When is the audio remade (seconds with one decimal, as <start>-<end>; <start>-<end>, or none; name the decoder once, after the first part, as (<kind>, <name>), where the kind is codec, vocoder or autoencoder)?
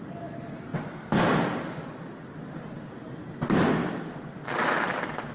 none